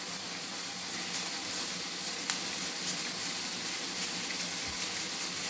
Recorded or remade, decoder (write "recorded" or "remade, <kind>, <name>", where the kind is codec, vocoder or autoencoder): recorded